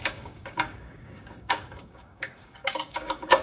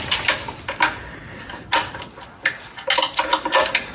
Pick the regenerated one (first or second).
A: first